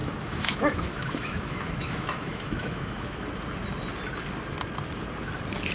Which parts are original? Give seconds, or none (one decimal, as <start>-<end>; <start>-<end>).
3.2-5.7